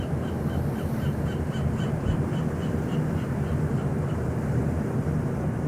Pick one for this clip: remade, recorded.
remade